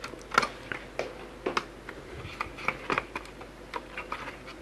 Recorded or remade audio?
recorded